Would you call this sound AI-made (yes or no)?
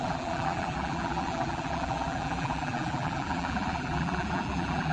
yes